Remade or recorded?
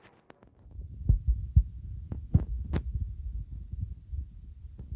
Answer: recorded